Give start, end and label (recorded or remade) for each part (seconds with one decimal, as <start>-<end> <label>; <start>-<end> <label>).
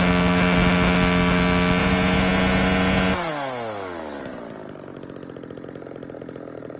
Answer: 0.0-1.8 recorded; 1.8-3.3 remade; 3.3-6.8 recorded